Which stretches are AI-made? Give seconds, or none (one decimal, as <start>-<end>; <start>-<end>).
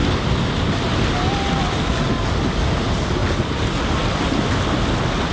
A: none